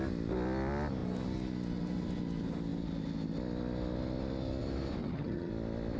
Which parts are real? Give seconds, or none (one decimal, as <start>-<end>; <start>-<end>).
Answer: 0.0-5.0; 5.5-6.0